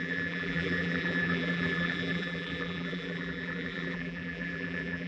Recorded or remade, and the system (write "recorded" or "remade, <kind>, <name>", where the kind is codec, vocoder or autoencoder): remade, vocoder, BigVGAN v2